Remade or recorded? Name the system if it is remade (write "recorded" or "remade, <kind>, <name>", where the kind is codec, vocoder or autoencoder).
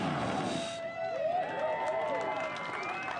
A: recorded